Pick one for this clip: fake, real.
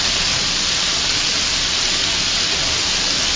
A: real